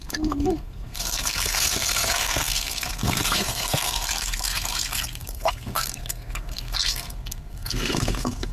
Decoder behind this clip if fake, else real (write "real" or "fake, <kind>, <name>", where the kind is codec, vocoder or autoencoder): fake, codec, SNAC